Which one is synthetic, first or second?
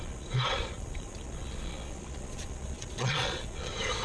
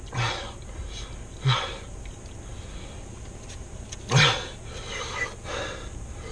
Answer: first